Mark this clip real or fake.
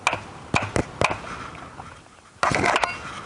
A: real